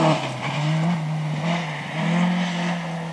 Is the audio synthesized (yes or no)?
no